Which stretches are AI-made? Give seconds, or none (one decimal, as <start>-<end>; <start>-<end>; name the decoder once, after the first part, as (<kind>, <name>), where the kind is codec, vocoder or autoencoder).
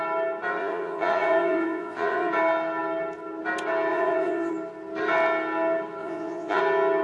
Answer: 0.6-2.3 (vocoder, Vocos); 3.9-4.5; 6.0-6.6